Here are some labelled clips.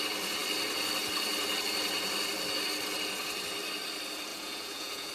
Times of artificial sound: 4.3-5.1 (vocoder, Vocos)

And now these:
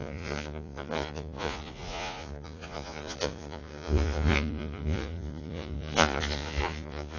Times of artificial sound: 0.0-7.2 (vocoder, Vocos)